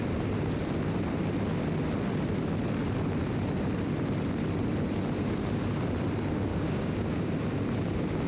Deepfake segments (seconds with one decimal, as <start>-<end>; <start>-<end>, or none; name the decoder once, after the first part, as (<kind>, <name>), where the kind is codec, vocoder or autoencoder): 6.5-7.3 (codec, DAC)